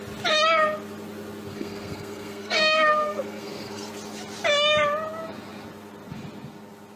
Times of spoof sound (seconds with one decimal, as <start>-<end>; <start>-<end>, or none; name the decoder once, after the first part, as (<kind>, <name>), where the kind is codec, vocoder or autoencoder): 1.5-3.9 (codec, SNAC)